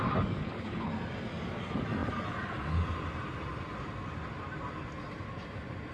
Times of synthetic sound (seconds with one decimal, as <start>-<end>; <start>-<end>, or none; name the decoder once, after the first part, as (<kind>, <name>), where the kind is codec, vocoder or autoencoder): 0.4-0.9 (codec, HILCodec)